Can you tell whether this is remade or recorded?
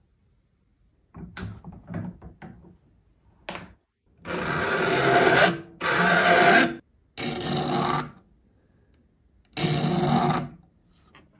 recorded